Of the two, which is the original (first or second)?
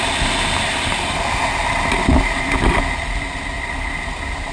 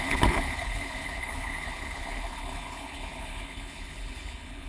first